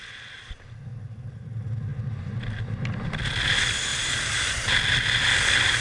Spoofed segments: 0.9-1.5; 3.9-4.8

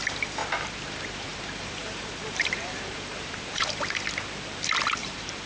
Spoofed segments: 0.4-3.7; 5.0-5.5

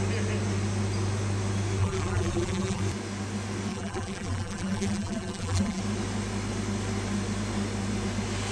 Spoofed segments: 1.8-2.8; 3.7-5.8

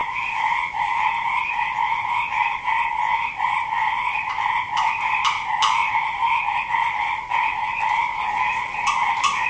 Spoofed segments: 0.0-9.5